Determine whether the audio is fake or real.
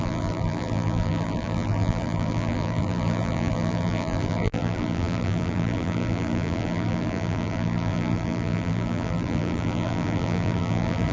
fake